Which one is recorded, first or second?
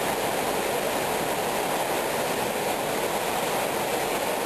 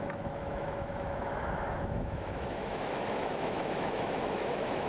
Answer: first